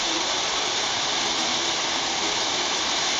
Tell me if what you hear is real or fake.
fake